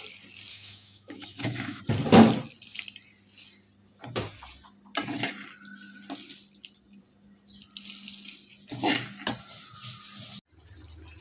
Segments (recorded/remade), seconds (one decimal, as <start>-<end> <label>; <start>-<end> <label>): 0.0-0.5 recorded; 0.5-1.8 remade; 1.8-11.2 recorded

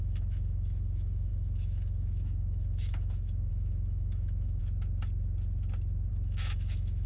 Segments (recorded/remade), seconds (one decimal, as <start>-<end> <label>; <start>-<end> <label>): 0.0-4.6 remade; 4.6-6.1 recorded; 6.1-7.1 remade

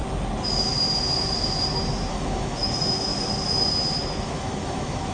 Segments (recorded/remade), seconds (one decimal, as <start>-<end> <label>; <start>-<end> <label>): 0.0-2.1 recorded; 2.1-3.1 remade; 3.1-4.0 recorded; 4.0-5.1 remade

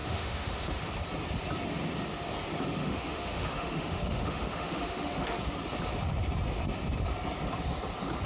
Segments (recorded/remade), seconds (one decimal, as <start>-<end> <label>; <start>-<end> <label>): 0.0-0.9 remade; 0.9-2.8 recorded; 2.8-5.4 remade; 5.4-8.3 recorded

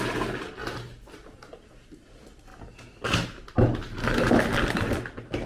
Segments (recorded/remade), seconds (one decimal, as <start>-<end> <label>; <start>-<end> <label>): 0.0-5.5 recorded

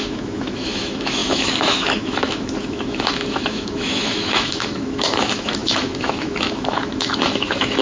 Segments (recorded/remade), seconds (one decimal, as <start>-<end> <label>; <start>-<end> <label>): 0.0-7.8 remade

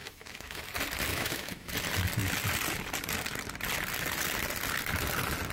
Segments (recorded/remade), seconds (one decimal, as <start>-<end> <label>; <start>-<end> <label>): 0.0-0.6 remade; 0.6-1.1 recorded; 1.1-1.7 remade; 1.7-5.5 recorded